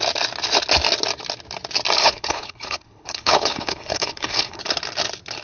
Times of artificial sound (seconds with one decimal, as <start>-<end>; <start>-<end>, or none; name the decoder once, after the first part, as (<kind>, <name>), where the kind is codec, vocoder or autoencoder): 2.0-4.6 (codec, HILCodec)